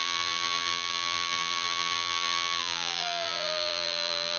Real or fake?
fake